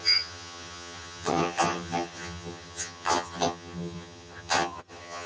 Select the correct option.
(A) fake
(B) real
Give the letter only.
A